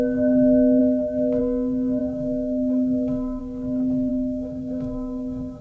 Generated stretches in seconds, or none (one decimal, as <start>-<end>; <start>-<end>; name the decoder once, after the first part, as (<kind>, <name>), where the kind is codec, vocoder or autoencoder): 2.0-3.4 (codec, DAC); 4.1-5.6